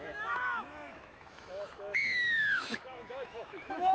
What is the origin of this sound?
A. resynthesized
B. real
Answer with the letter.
A